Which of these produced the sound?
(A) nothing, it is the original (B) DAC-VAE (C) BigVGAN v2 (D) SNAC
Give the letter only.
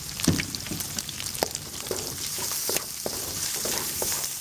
C